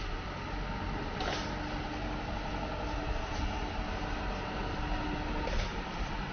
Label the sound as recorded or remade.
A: recorded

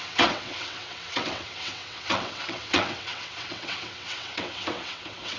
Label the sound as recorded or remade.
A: remade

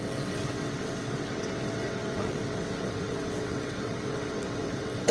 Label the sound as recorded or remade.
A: remade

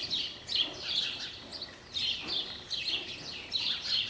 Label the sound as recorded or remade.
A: recorded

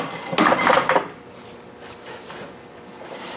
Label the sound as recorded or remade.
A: recorded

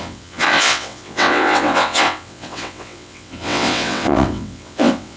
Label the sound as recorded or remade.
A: remade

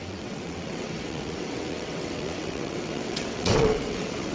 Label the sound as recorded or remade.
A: remade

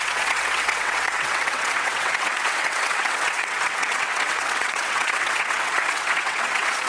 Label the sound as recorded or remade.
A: remade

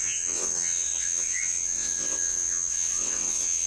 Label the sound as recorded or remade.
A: remade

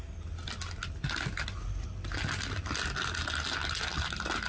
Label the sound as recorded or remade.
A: recorded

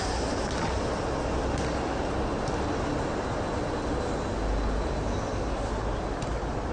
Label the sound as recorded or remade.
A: recorded